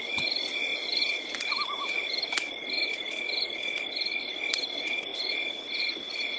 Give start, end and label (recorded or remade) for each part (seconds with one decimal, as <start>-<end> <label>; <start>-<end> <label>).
0.0-0.7 remade; 0.7-4.2 recorded; 4.2-5.1 remade; 5.1-6.4 recorded